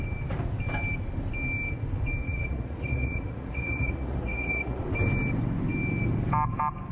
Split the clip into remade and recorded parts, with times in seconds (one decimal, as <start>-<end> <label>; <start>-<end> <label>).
0.0-2.2 recorded; 2.2-4.8 remade; 4.8-6.9 recorded